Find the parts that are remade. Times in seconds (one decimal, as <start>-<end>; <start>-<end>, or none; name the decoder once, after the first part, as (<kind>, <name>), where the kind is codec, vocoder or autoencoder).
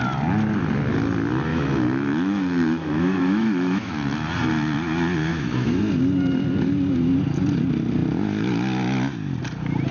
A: 1.5-3.9 (autoencoder, DAC-VAE); 5.3-5.8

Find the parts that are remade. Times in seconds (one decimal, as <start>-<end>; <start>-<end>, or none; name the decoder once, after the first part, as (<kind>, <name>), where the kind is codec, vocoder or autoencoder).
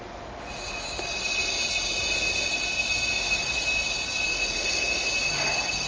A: none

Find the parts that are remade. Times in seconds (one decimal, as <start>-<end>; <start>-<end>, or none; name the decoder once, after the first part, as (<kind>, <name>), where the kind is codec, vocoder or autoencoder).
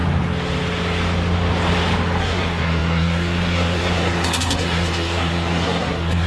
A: 2.2-6.3 (codec, SNAC)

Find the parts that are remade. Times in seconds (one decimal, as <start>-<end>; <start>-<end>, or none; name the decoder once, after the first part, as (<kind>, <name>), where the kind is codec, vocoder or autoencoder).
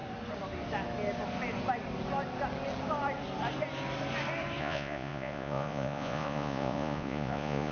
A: 4.6-7.7 (vocoder, Vocos)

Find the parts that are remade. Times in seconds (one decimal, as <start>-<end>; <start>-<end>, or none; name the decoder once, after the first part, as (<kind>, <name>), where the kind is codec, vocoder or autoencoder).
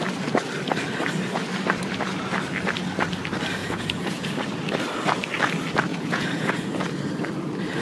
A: 3.6-4.3 (vocoder, Vocos); 5.9-6.8